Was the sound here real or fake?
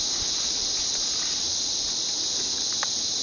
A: real